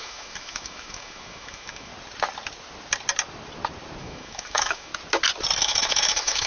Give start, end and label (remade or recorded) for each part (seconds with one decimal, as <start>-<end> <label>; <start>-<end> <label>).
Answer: 0.0-1.9 remade; 1.9-4.0 recorded; 4.0-4.9 remade; 4.9-5.6 recorded; 5.6-6.5 remade